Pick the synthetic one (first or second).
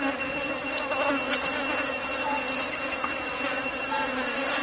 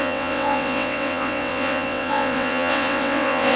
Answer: second